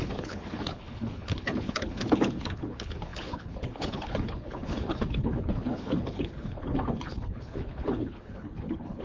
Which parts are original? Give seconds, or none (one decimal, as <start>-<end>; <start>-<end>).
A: none